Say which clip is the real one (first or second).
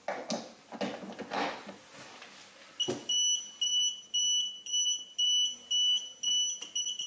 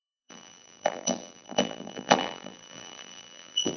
first